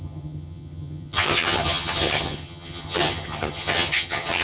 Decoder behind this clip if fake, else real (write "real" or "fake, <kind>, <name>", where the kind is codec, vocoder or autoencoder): fake, vocoder, HiFi-GAN